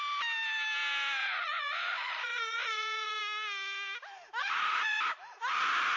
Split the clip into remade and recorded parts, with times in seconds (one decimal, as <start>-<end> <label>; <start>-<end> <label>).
0.0-1.2 recorded; 1.2-3.2 remade; 3.2-4.4 recorded; 4.4-5.0 remade; 5.0-6.0 recorded